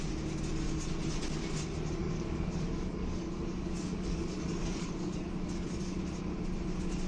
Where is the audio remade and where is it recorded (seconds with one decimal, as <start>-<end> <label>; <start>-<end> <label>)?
0.0-2.0 recorded; 2.0-6.0 remade; 6.0-7.1 recorded

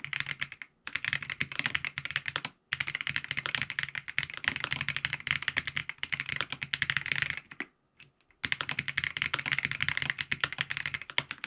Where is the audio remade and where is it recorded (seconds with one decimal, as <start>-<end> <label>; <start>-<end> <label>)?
0.0-11.5 recorded

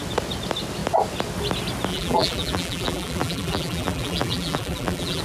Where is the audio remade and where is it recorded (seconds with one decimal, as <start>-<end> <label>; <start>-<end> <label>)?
0.0-1.9 recorded; 1.9-5.2 remade

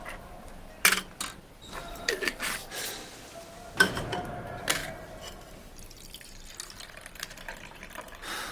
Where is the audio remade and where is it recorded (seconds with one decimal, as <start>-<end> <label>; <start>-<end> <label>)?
0.0-8.5 recorded

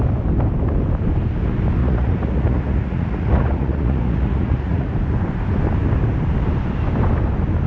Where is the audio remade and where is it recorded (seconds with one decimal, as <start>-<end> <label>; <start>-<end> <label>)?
0.0-1.8 recorded; 1.8-4.9 remade; 4.9-7.7 recorded

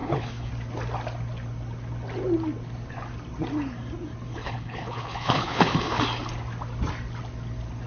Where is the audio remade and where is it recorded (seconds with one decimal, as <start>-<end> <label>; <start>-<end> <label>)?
0.0-0.5 remade; 0.5-4.3 recorded; 4.3-6.0 remade; 6.0-7.9 recorded

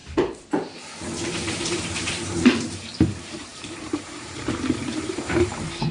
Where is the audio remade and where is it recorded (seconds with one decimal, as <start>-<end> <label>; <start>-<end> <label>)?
0.0-1.3 recorded; 1.3-5.9 remade